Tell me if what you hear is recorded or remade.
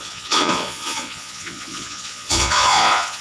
remade